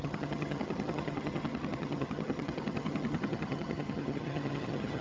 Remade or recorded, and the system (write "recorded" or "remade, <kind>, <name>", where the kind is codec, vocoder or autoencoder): remade, vocoder, HiFi-GAN